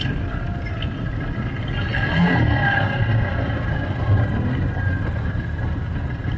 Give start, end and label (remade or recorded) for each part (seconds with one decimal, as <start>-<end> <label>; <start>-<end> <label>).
0.0-6.4 recorded

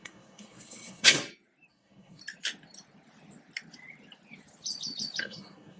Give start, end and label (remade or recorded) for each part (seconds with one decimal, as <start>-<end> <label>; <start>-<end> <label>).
0.0-1.2 remade; 1.2-1.7 recorded; 1.7-2.2 remade; 2.2-5.2 recorded; 5.2-5.8 remade

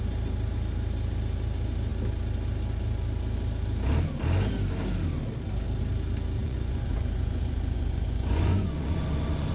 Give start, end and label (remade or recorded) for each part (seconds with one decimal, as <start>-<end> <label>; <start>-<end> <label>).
0.0-6.4 recorded; 6.4-9.5 remade

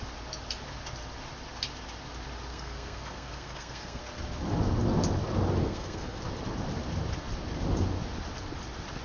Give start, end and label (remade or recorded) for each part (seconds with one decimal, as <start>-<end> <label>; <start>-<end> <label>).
0.0-2.5 recorded; 2.5-4.0 remade; 4.0-5.6 recorded; 5.6-6.2 remade; 6.2-9.0 recorded